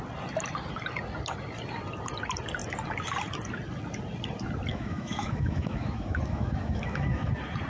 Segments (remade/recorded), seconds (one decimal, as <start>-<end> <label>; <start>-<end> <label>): 0.0-4.7 recorded; 4.7-7.3 remade; 7.3-7.7 recorded